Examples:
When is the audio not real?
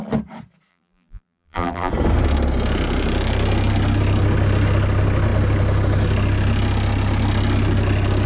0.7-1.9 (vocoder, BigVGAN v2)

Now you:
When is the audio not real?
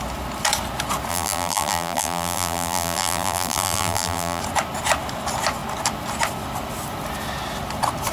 1.1-4.4 (vocoder, BigVGAN v2)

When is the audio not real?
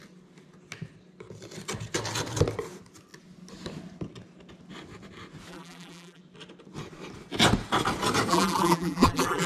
5.5-6.2 (vocoder, BigVGAN v2); 8.3-9.5